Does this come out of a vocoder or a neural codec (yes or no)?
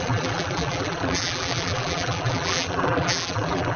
yes